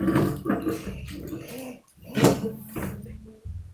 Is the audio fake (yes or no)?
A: no